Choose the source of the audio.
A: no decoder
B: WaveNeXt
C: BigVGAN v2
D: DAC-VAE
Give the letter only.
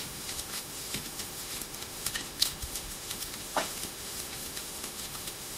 D